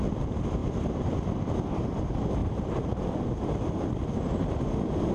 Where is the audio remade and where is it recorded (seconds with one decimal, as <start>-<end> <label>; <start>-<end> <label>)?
0.0-0.6 recorded; 0.6-1.1 remade; 1.1-2.4 recorded; 2.4-3.0 remade; 3.0-5.1 recorded